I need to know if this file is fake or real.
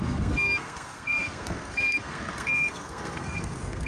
fake